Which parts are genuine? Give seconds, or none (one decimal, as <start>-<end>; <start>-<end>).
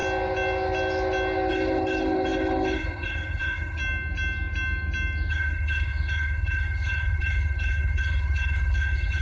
0.0-1.5; 3.8-5.3